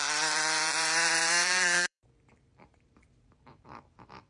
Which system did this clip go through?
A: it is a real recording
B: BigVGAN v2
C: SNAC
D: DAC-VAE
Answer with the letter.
B